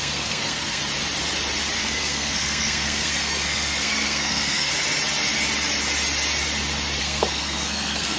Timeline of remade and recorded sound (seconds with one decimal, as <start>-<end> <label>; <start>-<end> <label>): 0.0-0.8 remade; 0.8-1.8 recorded; 1.8-4.7 remade; 4.7-7.0 recorded; 7.0-8.2 remade